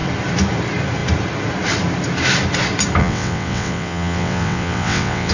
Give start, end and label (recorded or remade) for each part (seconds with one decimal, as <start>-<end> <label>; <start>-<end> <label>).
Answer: 0.0-3.0 recorded; 3.0-5.3 remade